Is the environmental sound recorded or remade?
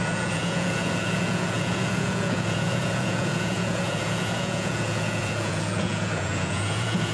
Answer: remade